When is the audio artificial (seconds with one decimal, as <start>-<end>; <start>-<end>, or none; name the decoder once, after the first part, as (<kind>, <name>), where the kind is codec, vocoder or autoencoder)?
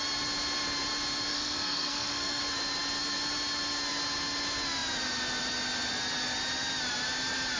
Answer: 1.3-2.4 (codec, SNAC)